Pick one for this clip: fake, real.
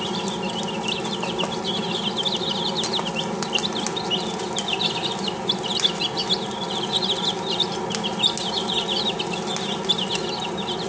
real